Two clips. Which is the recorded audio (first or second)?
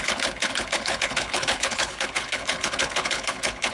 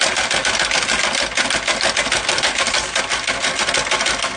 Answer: second